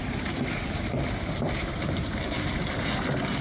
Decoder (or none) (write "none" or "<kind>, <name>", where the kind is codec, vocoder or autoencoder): vocoder, BigVGAN v2